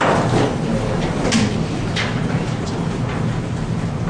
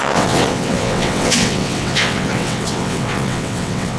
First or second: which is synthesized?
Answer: second